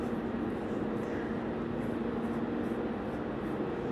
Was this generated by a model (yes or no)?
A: no